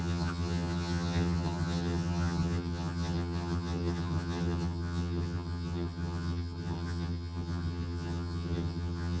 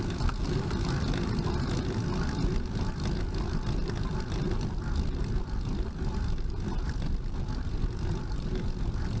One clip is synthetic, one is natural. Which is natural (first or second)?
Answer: second